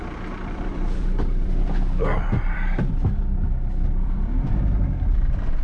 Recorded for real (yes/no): no